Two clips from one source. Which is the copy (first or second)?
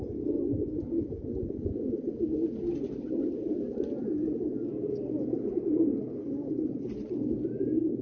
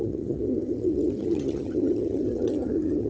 second